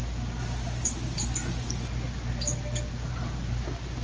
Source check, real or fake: real